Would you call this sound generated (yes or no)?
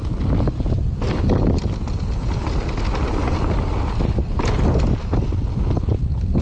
no